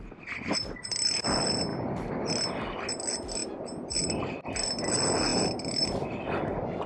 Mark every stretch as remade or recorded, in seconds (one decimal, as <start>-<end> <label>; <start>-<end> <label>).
0.0-6.9 recorded